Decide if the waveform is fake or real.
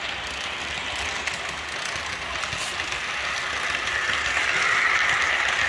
real